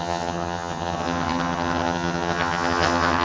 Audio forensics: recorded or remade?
remade